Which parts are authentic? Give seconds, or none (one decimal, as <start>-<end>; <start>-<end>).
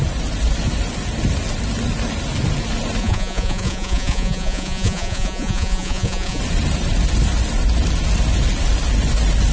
0.0-3.0; 6.4-9.5